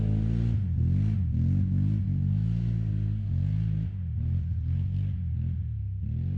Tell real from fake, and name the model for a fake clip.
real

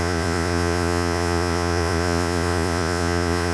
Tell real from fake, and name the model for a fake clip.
fake, vocoder, Vocos